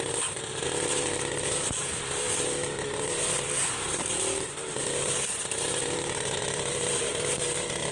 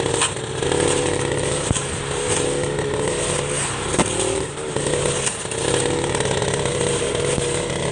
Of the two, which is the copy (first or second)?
first